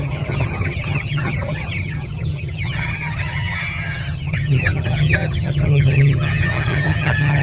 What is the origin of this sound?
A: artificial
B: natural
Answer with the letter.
A